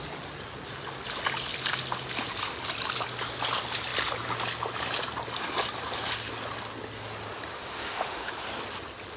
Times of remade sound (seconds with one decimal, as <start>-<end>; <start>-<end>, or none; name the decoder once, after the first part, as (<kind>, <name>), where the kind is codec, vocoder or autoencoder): 7.5-8.3 (autoencoder, DAC-VAE)